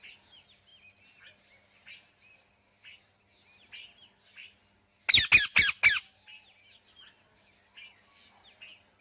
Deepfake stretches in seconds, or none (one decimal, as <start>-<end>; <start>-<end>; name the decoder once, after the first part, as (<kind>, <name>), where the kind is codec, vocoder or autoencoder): none